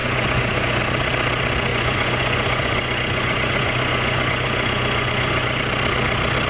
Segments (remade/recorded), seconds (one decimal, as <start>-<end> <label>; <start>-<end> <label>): 0.0-0.8 remade; 0.8-1.7 recorded; 1.7-5.6 remade; 5.6-6.5 recorded